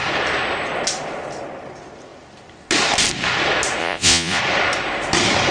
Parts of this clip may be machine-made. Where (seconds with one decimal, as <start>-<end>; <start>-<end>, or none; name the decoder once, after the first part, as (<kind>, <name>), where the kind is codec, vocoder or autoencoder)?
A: 3.8-4.4 (vocoder, Vocos)